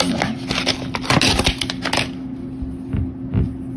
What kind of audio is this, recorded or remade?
recorded